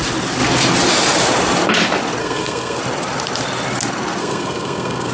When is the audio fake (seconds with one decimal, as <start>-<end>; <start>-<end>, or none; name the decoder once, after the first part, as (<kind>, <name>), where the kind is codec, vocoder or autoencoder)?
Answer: 2.2-2.8 (codec, SNAC); 4.2-5.1